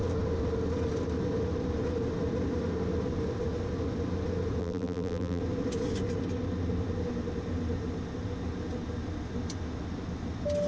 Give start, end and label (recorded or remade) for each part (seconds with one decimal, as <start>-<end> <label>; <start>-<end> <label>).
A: 0.0-4.6 recorded; 4.6-5.4 remade; 5.4-10.7 recorded

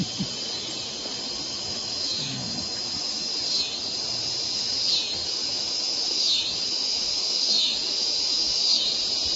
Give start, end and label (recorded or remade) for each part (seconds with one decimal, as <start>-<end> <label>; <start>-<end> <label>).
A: 0.0-1.5 recorded; 1.5-3.3 remade; 3.3-5.2 recorded; 5.2-8.8 remade; 8.8-9.4 recorded

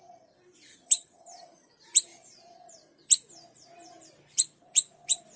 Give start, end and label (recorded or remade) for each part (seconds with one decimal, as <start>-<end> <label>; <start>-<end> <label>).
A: 0.0-0.7 recorded; 0.7-1.7 remade; 1.7-5.4 recorded

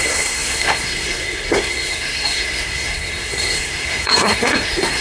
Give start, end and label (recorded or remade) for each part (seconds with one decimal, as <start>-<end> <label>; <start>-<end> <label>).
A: 0.0-5.0 remade

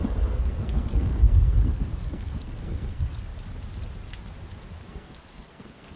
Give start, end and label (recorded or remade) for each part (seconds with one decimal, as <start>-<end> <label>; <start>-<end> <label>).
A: 0.0-3.3 remade; 3.3-4.9 recorded; 4.9-6.0 remade

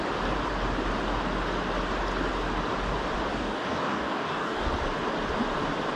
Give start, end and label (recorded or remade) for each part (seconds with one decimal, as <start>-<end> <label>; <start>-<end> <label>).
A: 0.0-3.3 recorded; 3.3-4.7 remade; 4.7-6.0 recorded

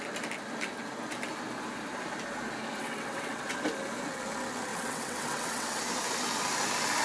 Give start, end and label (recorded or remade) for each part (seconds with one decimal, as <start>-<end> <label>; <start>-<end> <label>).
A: 0.0-2.8 recorded; 2.8-3.5 remade; 3.5-4.7 recorded; 4.7-5.8 remade; 5.8-7.0 recorded

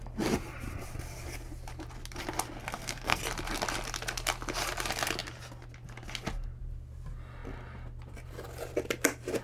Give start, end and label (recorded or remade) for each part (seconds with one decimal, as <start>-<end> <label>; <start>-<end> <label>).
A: 0.0-2.6 recorded; 2.6-3.2 remade; 3.2-9.4 recorded